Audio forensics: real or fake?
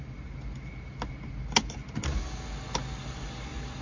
real